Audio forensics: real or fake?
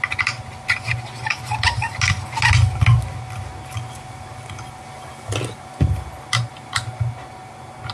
real